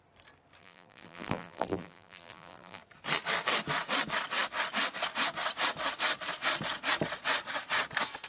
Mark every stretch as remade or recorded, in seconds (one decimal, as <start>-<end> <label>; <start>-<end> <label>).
0.0-0.6 recorded; 0.6-2.8 remade; 2.8-8.3 recorded